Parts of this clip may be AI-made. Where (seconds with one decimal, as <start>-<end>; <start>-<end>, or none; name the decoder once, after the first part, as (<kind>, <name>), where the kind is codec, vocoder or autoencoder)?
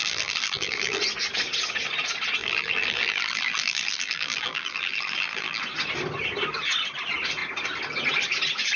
0.0-1.0 (vocoder, BigVGAN v2); 2.4-5.6